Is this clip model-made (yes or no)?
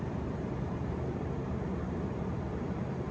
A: yes